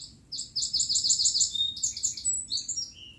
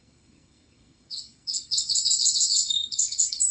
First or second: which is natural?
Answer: first